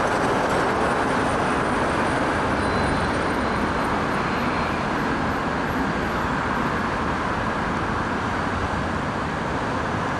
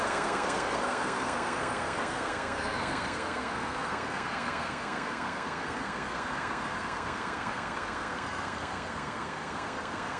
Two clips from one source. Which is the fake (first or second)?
second